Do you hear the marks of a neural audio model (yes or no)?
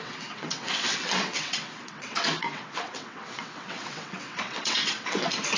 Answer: yes